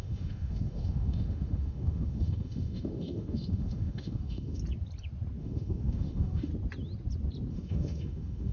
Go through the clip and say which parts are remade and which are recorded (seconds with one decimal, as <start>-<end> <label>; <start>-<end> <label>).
0.0-4.6 remade; 4.6-5.4 recorded; 5.4-6.5 remade; 6.5-7.5 recorded; 7.5-8.5 remade